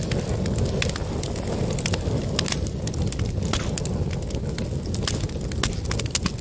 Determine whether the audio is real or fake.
real